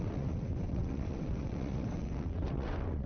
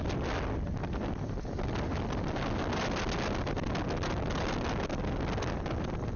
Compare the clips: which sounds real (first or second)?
second